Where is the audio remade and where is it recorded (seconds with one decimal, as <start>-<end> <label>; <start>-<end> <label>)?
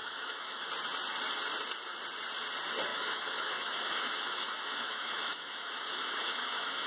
0.0-0.7 remade; 0.7-2.9 recorded; 2.9-6.9 remade